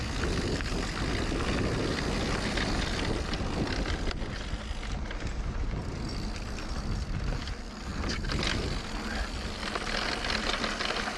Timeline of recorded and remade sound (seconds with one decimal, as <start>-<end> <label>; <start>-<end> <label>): 0.0-11.2 recorded